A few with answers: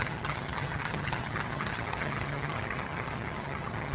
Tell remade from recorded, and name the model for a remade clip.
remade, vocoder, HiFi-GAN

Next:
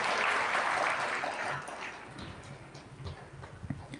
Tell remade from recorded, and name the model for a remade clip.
recorded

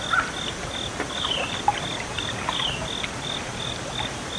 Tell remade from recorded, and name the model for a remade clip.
recorded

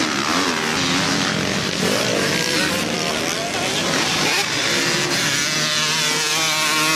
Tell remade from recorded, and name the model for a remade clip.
recorded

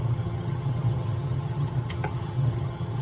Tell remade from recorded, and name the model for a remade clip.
remade, vocoder, HiFi-GAN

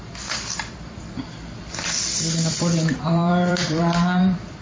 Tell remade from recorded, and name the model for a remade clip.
remade, vocoder, BigVGAN v2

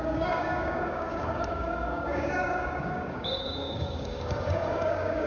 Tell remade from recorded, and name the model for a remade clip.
remade, codec, DAC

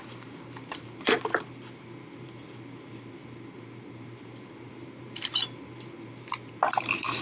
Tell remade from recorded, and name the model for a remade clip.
remade, vocoder, BigVGAN v2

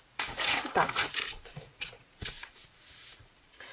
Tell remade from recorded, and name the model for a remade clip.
remade, vocoder, Vocos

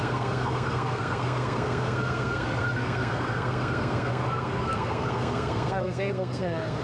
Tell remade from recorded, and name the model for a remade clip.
remade, codec, SNAC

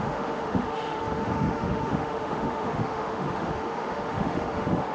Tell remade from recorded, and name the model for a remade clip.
remade, autoencoder, DAC-VAE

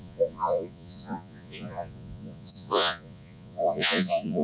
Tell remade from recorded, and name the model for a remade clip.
remade, vocoder, Vocos